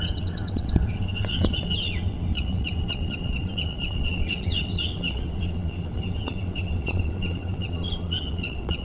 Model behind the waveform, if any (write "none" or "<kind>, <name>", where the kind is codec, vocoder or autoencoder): vocoder, WaveNeXt